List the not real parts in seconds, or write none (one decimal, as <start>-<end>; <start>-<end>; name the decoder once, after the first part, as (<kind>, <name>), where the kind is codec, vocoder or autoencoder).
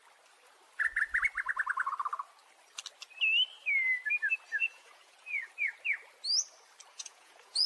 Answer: 4.6-5.5 (vocoder, Vocos); 6.9-7.7